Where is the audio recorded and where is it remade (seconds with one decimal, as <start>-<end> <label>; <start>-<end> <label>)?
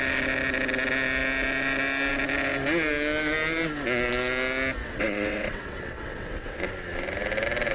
0.0-4.8 recorded; 4.8-6.6 remade; 6.6-7.7 recorded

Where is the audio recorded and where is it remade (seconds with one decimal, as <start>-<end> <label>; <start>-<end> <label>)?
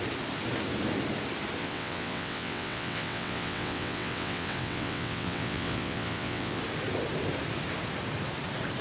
0.0-1.6 recorded; 1.6-6.6 remade; 6.6-8.8 recorded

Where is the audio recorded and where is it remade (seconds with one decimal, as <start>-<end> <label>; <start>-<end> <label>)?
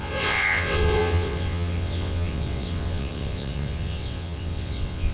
0.0-5.1 remade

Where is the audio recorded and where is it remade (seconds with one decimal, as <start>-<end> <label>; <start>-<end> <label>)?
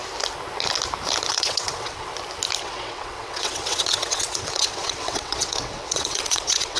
0.0-1.3 recorded; 1.3-2.1 remade; 2.1-2.6 recorded; 2.6-6.8 remade